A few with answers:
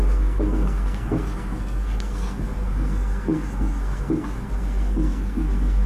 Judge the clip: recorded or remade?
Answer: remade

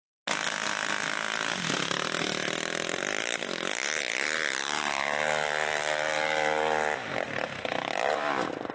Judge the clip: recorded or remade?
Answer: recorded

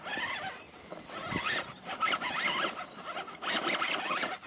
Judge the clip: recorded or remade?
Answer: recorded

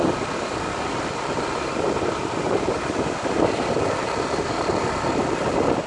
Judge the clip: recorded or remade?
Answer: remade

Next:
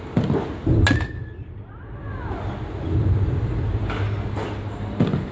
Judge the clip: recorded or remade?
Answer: recorded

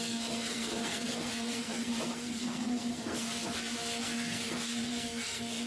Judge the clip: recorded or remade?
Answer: remade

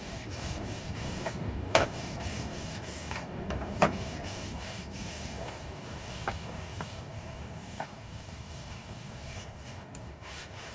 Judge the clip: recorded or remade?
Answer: remade